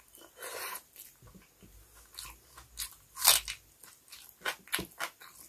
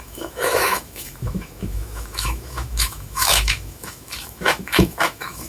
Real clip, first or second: first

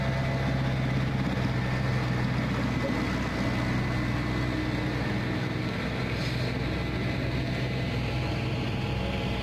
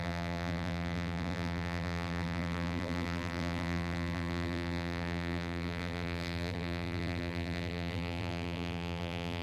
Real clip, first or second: first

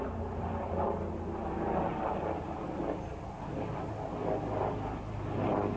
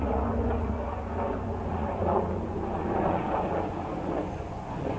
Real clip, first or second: first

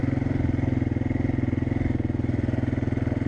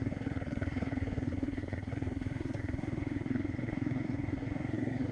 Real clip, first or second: first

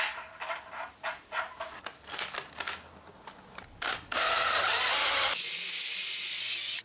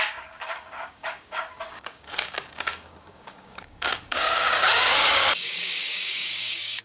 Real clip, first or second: first